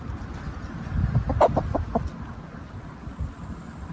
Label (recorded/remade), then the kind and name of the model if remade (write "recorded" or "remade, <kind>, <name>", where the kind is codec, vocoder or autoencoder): recorded